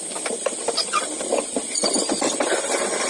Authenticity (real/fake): real